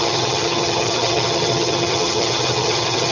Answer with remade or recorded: remade